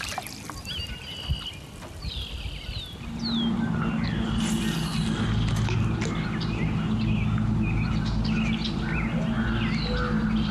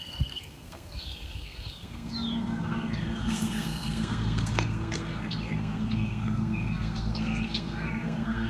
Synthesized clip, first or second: second